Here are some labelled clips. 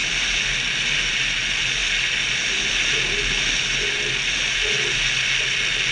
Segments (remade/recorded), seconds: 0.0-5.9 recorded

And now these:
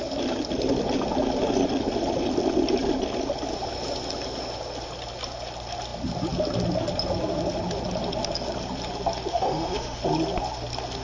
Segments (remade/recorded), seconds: 0.0-9.3 recorded; 9.3-10.0 remade; 10.0-11.0 recorded